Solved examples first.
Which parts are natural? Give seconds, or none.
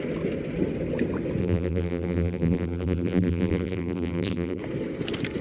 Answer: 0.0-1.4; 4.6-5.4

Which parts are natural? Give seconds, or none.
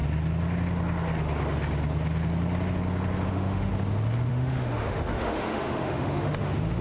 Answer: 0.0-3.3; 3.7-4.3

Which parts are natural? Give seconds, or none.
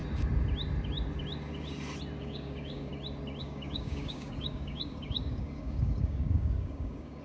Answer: 0.0-2.2; 2.9-3.4